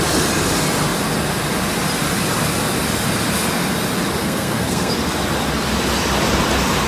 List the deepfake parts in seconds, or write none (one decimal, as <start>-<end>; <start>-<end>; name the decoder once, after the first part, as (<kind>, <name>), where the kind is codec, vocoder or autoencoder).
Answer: 4.2-4.9 (codec, SNAC)